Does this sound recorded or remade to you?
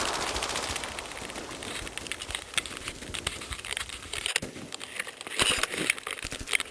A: recorded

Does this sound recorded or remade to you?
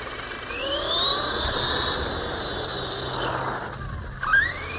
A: recorded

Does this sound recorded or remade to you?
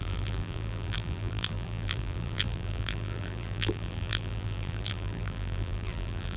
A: remade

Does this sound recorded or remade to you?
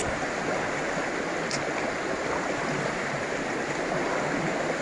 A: recorded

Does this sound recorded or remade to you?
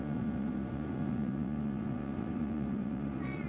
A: remade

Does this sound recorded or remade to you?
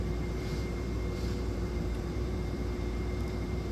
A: remade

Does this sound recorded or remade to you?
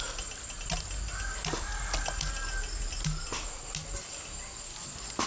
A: recorded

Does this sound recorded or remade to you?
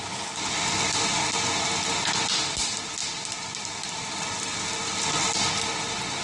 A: recorded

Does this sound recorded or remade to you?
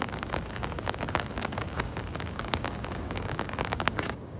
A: remade